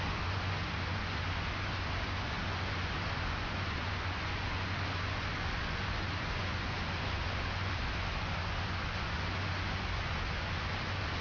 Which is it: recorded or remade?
remade